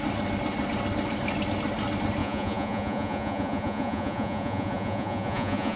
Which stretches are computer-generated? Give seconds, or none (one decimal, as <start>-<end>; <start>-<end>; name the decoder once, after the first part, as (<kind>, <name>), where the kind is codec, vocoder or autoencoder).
2.2-5.8 (vocoder, Vocos)